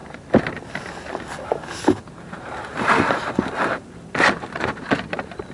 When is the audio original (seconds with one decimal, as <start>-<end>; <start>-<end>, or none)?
0.0-5.5